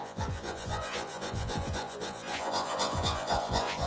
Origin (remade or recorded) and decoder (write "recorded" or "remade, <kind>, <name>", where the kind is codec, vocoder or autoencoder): remade, vocoder, Vocos